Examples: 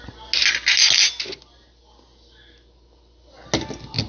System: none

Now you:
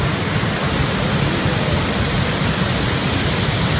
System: none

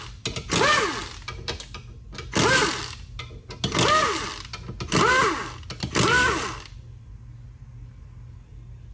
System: none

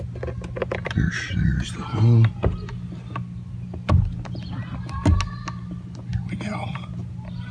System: none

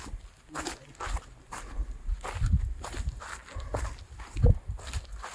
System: none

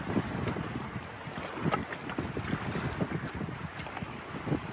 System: none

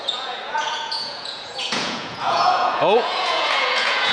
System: vocoder, Vocos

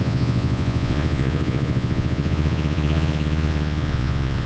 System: vocoder, Vocos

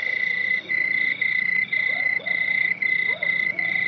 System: vocoder, Vocos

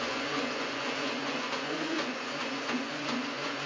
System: vocoder, Vocos